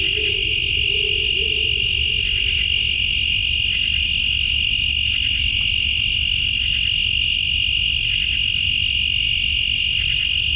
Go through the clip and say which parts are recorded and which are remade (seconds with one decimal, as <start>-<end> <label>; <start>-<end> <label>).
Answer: 0.0-10.6 recorded